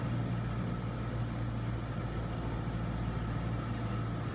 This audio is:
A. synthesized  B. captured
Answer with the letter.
B